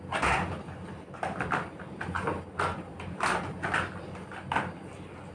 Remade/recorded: recorded